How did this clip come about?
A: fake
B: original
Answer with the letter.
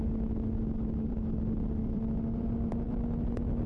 A